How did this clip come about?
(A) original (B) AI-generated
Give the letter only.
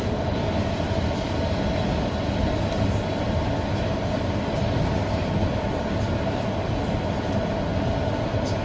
A